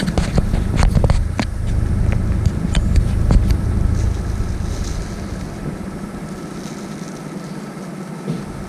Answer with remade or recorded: recorded